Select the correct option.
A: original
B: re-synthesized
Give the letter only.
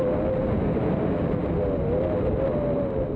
A